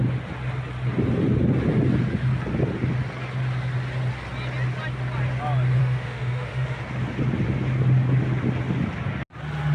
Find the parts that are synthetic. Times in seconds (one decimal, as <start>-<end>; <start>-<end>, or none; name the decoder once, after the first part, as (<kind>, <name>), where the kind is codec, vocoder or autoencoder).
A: 5.8-6.8 (autoencoder, DAC-VAE)